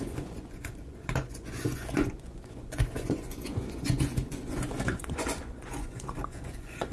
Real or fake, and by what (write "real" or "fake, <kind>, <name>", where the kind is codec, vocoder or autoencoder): fake, vocoder, Vocos